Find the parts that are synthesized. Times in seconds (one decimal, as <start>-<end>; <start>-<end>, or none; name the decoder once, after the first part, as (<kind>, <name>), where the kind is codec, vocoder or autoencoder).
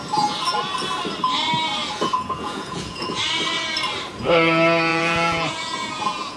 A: 1.8-3.2 (vocoder, Vocos); 4.9-6.4